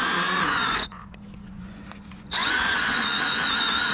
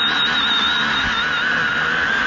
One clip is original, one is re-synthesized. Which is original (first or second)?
second